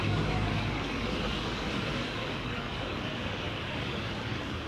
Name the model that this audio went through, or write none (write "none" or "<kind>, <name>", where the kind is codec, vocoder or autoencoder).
codec, DAC